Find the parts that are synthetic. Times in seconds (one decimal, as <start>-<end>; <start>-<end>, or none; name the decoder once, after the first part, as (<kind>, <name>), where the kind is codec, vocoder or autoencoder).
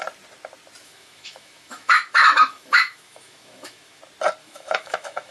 0.8-4.0 (autoencoder, DAC-VAE); 4.4-5.3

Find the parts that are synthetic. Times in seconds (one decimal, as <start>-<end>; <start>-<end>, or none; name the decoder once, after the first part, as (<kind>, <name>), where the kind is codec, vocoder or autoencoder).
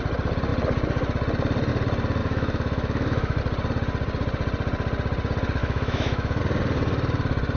2.2-3.4 (autoencoder, DAC-VAE); 5.6-6.4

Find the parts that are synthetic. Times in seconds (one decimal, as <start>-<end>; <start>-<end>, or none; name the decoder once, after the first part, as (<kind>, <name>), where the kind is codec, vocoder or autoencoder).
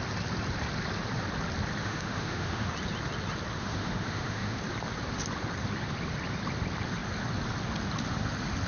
1.8-2.7 (autoencoder, DAC-VAE); 3.6-4.6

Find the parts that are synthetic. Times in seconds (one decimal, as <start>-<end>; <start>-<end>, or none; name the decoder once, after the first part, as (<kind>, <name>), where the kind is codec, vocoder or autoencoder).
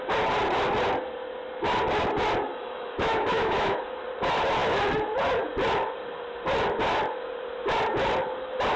2.5-3.8 (autoencoder, DAC-VAE)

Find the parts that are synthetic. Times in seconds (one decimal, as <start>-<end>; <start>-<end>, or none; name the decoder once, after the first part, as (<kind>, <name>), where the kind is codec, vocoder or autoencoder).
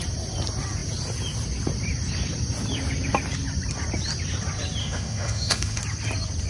4.8-5.8 (autoencoder, DAC-VAE)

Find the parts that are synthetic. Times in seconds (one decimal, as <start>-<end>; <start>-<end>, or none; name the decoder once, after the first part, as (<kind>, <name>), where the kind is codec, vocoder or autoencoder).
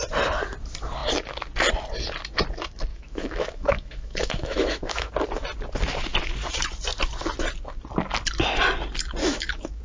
2.9-5.1 (autoencoder, DAC-VAE); 9.2-9.8